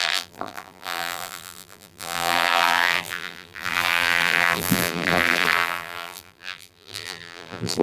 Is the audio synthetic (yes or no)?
yes